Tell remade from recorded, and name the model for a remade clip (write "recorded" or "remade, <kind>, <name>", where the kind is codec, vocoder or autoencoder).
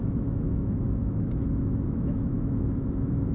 remade, autoencoder, DAC-VAE